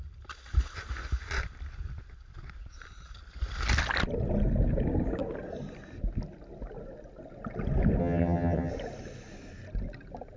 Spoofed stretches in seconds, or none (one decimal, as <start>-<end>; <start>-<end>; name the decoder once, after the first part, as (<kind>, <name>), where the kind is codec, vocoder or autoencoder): 8.0-8.7 (vocoder, HiFi-GAN)